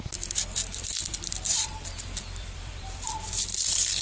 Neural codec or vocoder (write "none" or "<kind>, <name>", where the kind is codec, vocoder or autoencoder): vocoder, BigVGAN v2